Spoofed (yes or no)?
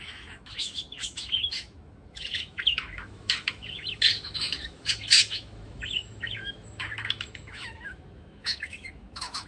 yes